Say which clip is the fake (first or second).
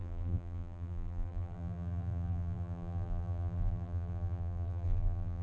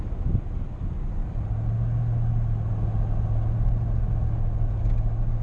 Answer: first